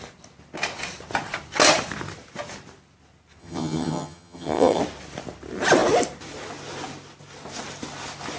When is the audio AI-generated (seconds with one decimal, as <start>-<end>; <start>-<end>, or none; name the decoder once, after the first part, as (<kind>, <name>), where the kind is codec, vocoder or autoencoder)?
3.4-4.8 (vocoder, HiFi-GAN)